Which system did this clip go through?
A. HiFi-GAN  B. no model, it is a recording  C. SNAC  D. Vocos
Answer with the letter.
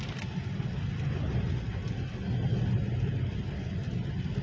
B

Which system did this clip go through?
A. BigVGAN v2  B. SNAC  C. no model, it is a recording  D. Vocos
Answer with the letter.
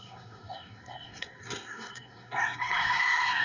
B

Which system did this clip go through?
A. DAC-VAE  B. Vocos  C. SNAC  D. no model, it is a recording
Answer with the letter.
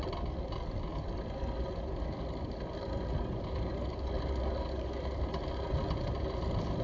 D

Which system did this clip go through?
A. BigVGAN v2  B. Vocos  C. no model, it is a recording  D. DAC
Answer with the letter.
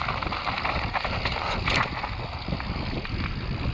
C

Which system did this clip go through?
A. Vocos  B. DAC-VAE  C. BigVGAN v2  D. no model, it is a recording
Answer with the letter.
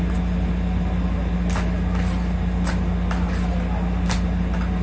D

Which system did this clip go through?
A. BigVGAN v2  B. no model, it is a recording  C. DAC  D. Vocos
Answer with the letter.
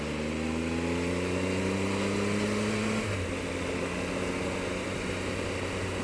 B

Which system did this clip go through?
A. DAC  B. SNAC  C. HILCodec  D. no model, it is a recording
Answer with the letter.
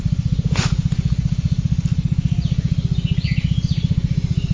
D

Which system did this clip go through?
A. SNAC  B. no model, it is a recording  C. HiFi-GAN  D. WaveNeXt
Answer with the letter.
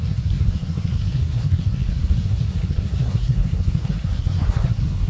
A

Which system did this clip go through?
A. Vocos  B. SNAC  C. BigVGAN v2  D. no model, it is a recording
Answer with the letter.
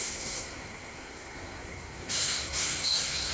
B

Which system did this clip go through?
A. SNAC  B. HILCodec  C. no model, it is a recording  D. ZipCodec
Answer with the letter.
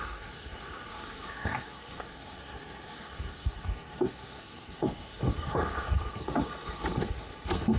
A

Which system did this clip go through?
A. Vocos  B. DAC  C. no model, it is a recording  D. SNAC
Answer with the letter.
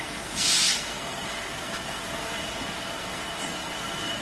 D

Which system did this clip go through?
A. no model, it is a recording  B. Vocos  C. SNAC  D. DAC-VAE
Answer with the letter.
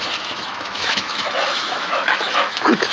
D